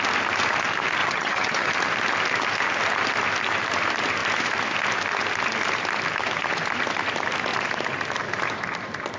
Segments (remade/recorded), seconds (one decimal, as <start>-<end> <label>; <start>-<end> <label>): 0.0-1.0 recorded; 1.0-1.7 remade; 1.7-9.2 recorded